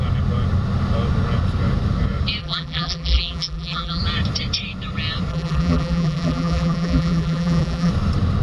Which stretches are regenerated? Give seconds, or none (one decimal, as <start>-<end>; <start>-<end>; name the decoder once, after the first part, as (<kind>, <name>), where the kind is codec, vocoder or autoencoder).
2.4-4.0 (vocoder, BigVGAN v2); 5.3-7.9